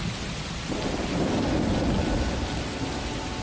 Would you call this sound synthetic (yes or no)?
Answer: no